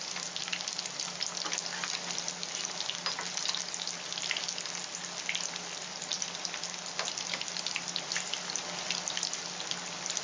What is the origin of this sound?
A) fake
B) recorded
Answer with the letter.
B